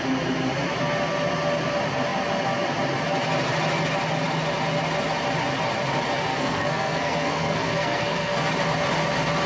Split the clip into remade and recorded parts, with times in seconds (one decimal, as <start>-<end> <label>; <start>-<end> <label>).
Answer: 0.0-6.3 recorded; 6.3-8.4 remade; 8.4-9.5 recorded